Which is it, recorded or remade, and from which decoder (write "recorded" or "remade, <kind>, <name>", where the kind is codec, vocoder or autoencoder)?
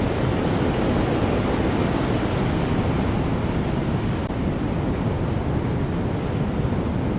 recorded